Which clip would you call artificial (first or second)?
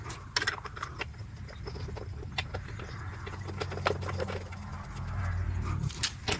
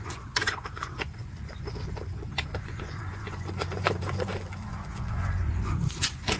second